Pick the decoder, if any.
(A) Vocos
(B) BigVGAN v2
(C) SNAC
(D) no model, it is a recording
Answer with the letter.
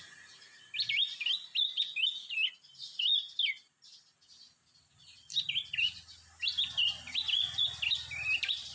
D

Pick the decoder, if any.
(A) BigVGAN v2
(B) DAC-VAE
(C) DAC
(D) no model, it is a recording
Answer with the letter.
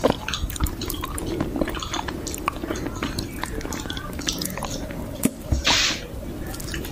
D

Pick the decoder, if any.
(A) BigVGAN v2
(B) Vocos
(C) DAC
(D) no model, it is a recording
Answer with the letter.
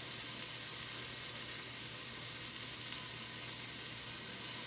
D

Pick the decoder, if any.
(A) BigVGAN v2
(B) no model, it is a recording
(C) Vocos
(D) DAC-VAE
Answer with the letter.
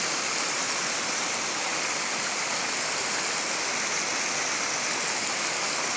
B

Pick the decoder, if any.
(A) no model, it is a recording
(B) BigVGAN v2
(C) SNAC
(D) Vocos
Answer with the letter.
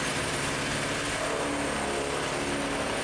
A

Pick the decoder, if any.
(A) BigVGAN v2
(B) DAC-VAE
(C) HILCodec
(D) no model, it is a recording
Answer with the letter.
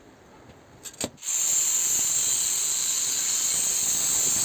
D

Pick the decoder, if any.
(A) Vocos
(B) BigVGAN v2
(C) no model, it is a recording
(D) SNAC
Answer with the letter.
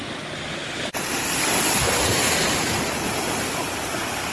C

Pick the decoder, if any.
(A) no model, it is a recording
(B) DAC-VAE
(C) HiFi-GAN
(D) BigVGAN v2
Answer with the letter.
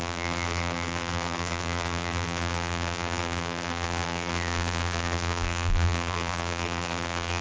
D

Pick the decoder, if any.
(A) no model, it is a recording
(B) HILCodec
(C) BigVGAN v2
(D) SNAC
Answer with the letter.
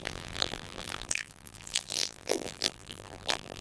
C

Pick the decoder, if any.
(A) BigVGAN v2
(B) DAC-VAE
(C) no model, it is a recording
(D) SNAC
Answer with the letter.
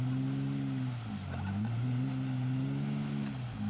C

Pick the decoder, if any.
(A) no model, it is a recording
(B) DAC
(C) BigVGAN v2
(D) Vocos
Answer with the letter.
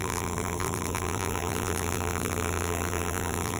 C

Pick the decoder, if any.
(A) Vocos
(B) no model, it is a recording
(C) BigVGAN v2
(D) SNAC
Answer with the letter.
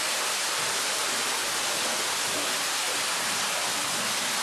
B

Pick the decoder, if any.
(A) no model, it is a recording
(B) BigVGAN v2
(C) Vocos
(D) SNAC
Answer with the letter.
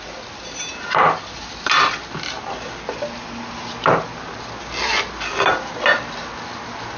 A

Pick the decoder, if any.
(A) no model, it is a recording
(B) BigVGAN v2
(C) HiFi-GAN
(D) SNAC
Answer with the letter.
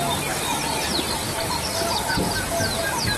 A